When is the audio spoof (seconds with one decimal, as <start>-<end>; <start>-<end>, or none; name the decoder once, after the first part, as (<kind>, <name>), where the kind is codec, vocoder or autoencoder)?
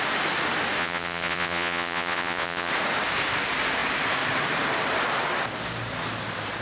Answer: 0.8-2.7 (vocoder, Vocos)